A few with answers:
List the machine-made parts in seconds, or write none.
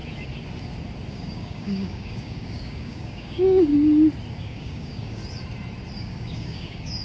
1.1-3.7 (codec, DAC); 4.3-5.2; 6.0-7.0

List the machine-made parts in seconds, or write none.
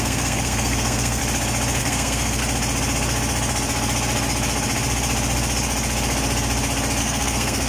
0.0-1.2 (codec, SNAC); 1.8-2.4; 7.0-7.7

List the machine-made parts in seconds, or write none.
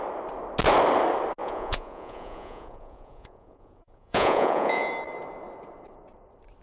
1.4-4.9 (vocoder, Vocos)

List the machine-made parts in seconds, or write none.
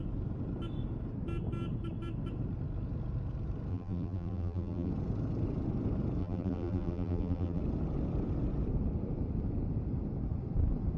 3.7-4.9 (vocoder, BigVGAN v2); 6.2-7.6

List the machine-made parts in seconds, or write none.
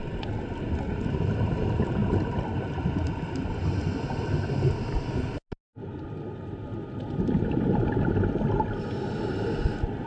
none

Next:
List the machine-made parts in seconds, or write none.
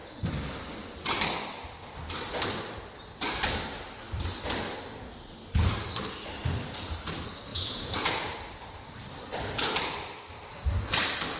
7.5-8.3 (vocoder, Vocos)